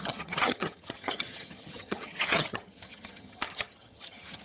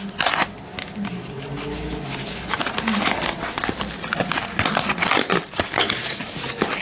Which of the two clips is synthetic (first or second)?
first